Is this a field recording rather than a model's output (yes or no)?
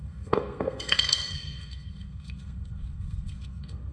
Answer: no